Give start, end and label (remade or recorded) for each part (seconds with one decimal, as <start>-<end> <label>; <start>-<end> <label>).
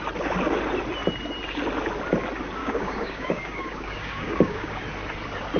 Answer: 0.0-2.6 recorded; 2.6-4.8 remade; 4.8-5.6 recorded